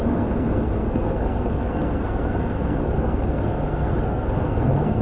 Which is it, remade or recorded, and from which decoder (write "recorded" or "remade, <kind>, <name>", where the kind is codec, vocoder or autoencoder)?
remade, codec, SNAC